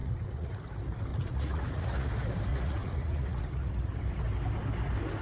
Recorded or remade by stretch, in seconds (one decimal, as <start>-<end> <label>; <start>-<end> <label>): 0.0-0.6 remade; 0.6-1.1 recorded; 1.1-2.1 remade; 2.1-2.5 recorded; 2.5-3.9 remade; 3.9-5.2 recorded

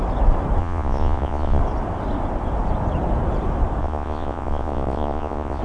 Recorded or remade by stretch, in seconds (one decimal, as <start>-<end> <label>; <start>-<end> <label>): 0.0-0.6 recorded; 0.6-1.6 remade; 1.6-3.8 recorded; 3.8-5.6 remade

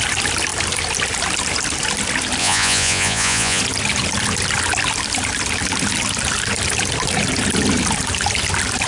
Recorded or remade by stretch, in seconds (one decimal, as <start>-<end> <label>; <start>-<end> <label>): 0.0-2.4 recorded; 2.4-3.6 remade; 3.6-8.9 recorded

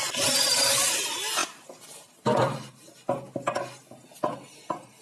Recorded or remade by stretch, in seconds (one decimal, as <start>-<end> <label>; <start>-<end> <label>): 0.0-5.0 recorded